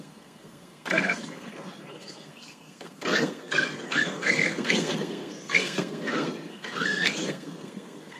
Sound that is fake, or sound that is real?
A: fake